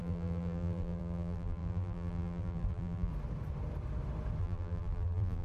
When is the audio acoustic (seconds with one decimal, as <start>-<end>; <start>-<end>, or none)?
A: 3.1-4.4